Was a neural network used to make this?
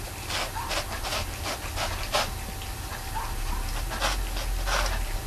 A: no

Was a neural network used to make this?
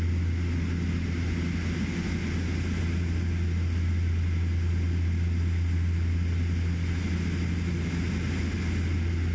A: no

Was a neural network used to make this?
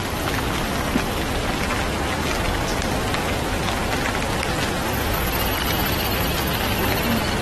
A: no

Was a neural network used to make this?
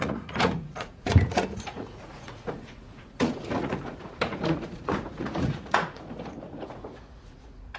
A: yes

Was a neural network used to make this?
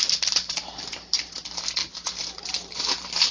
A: yes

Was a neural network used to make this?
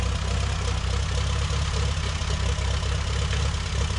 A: no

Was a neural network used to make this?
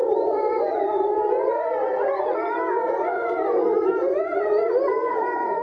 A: yes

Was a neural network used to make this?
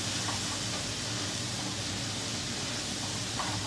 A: no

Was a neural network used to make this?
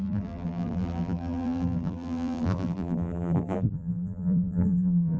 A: yes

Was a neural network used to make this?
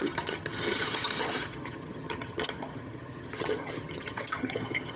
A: yes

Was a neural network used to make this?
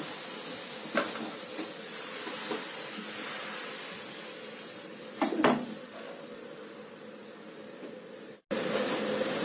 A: no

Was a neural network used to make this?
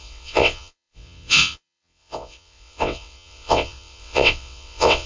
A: yes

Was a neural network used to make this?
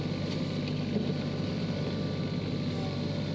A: no